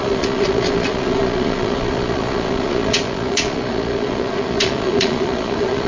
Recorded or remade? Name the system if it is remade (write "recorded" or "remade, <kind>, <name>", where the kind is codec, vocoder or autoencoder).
remade, vocoder, Vocos